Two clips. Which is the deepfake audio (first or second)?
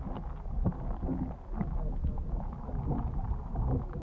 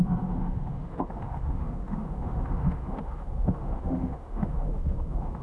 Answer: second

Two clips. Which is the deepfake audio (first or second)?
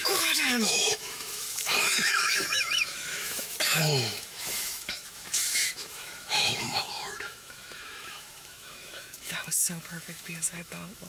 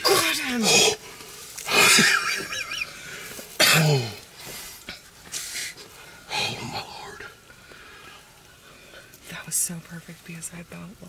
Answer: first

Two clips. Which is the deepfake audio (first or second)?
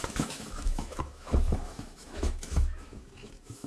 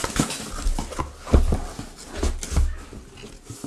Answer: first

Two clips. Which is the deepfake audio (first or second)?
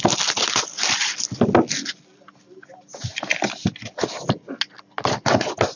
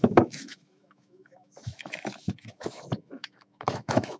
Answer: second